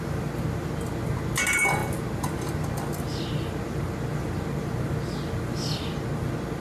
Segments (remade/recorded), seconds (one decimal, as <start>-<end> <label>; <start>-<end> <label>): 0.0-6.6 recorded

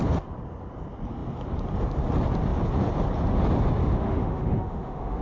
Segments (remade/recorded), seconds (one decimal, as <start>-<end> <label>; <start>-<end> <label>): 0.0-3.8 recorded; 3.8-5.2 remade

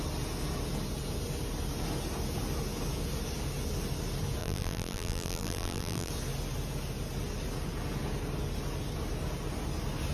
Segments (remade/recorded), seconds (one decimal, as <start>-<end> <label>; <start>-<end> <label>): 0.0-4.4 recorded; 4.4-6.1 remade; 6.1-10.1 recorded

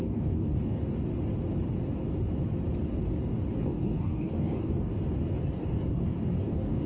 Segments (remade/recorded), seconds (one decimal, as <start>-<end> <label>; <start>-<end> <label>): 0.0-0.8 remade; 0.8-3.6 recorded; 3.6-4.9 remade; 4.9-5.5 recorded; 5.5-6.9 remade